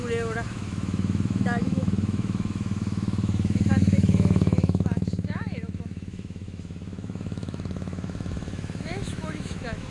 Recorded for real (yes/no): no